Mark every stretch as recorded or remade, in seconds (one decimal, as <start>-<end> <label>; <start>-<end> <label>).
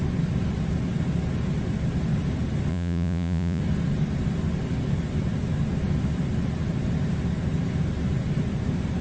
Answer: 0.0-2.7 recorded; 2.7-3.6 remade; 3.6-9.0 recorded